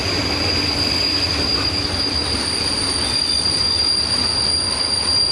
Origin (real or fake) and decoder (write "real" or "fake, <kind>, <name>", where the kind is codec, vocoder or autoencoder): real